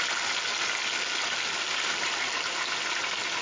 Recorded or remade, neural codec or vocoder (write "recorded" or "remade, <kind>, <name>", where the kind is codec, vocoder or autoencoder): recorded